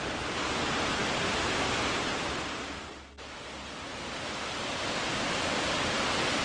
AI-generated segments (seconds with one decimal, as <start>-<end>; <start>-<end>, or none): none